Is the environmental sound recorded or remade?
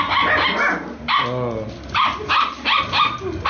recorded